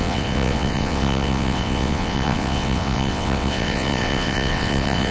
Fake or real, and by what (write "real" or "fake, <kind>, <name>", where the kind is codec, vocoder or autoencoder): fake, vocoder, WaveNeXt